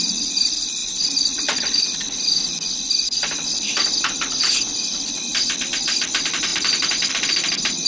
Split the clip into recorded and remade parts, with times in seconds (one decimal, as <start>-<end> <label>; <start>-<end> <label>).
0.0-5.3 remade; 5.3-5.9 recorded; 5.9-7.9 remade